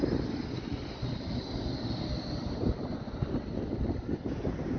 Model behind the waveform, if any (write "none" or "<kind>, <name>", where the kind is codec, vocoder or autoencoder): none